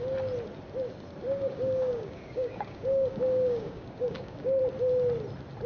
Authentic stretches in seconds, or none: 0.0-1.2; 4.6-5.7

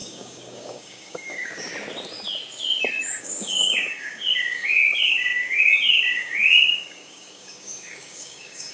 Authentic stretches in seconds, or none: 1.7-3.2

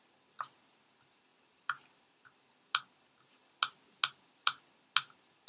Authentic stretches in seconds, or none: 0.0-5.5

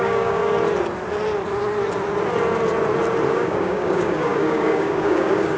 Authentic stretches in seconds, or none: 0.5-3.3

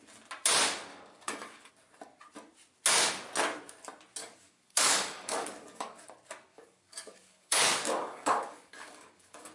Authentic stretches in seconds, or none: 0.0-0.9; 1.7-4.2; 6.1-6.5

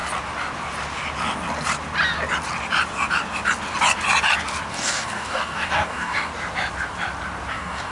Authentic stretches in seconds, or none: 0.0-4.7; 6.3-7.5

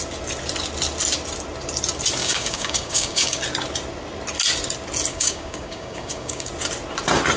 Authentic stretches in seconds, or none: 0.0-2.2; 3.4-5.1; 6.5-7.4

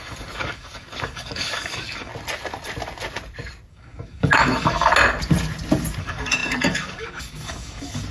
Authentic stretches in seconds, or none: 2.1-3.7; 4.9-6.0